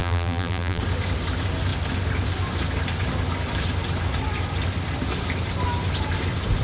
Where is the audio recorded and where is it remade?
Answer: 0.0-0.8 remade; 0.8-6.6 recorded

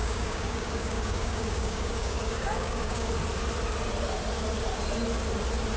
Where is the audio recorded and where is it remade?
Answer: 0.0-3.1 remade; 3.1-5.8 recorded